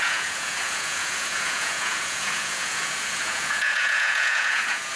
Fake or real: fake